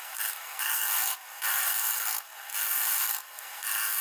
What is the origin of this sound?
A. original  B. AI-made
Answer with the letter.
B